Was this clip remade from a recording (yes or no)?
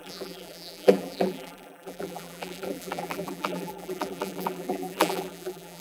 yes